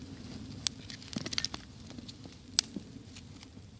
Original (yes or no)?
yes